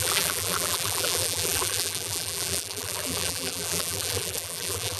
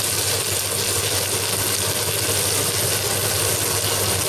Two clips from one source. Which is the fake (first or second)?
first